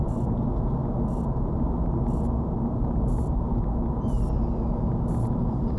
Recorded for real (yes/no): yes